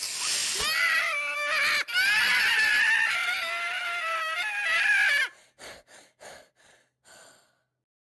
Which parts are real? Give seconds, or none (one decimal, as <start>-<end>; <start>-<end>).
0.0-8.1